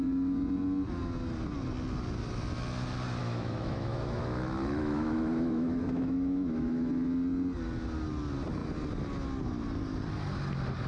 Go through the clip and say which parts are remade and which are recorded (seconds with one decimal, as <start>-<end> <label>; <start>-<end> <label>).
0.0-3.2 recorded; 3.2-6.9 remade; 6.9-10.9 recorded